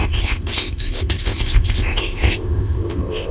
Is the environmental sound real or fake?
fake